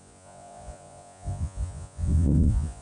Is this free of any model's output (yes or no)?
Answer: no